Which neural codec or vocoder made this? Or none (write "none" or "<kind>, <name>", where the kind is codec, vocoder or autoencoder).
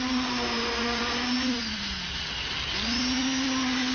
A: none